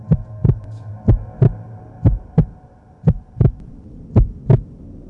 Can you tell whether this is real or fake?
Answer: real